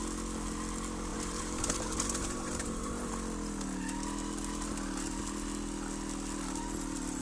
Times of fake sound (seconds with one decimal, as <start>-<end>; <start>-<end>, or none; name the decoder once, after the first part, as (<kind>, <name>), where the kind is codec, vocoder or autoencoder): 1.1-3.1 (vocoder, BigVGAN v2)